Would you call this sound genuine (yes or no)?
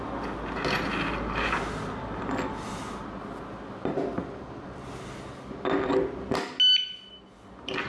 yes